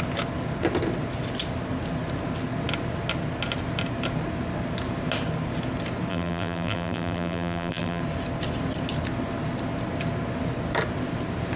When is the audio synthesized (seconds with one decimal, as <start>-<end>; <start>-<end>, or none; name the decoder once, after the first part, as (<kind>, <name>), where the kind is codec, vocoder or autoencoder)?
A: 6.1-8.0 (vocoder, BigVGAN v2)